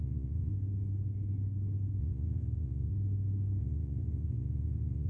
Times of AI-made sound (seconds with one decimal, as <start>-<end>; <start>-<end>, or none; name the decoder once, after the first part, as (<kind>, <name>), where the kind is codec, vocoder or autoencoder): 0.0-0.5 (vocoder, Vocos); 2.0-2.9; 3.6-5.1